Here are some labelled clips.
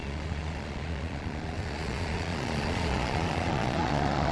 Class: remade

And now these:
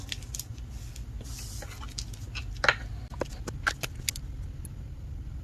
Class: recorded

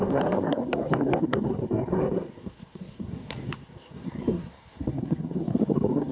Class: remade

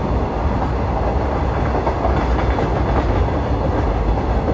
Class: recorded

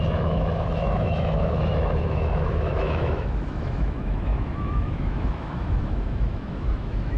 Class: remade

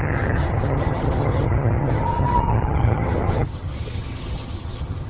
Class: remade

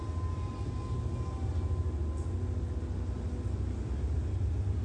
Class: recorded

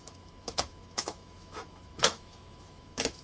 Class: remade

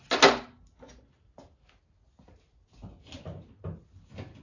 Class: recorded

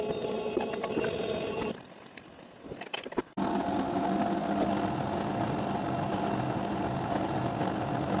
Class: recorded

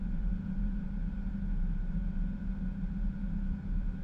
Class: remade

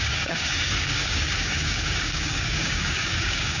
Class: remade